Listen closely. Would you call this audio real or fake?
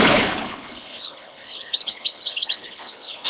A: fake